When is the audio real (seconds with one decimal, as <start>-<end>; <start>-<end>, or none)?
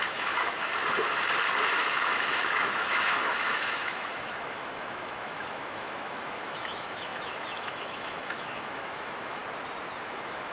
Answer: 0.7-1.6; 9.4-10.1